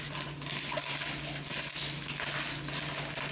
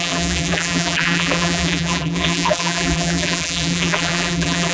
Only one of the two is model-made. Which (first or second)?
second